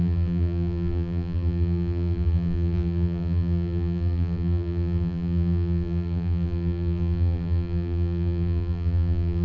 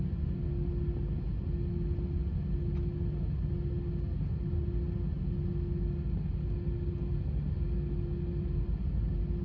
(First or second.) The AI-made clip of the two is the first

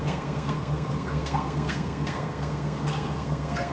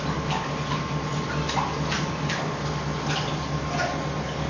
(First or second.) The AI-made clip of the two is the first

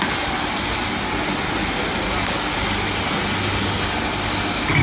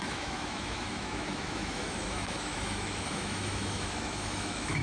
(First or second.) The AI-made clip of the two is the second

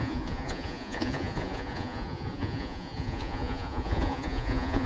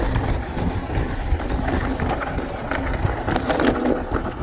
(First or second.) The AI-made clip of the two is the first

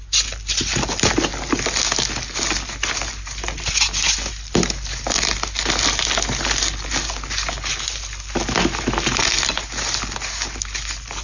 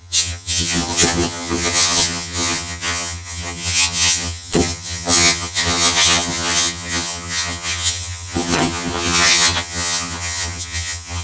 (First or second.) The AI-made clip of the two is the second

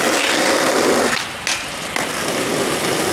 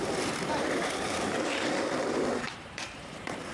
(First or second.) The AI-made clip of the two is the second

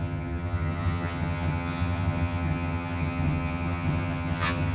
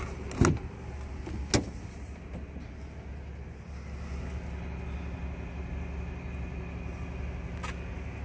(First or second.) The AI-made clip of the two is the first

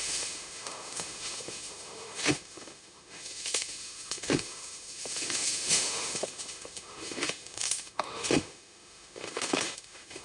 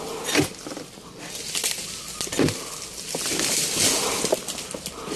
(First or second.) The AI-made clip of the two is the first